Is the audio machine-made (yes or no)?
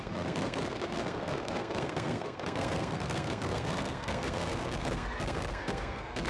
yes